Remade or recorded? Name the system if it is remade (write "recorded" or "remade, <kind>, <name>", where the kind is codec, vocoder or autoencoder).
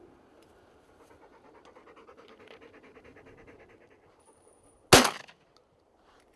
recorded